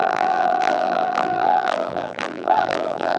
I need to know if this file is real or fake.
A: fake